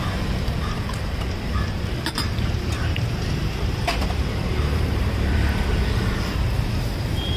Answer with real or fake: fake